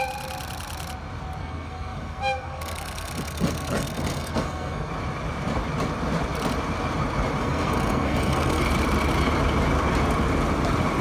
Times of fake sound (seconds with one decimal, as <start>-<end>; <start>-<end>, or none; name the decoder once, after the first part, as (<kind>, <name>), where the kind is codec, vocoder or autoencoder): 1.4-4.9 (codec, SNAC); 7.4-8.6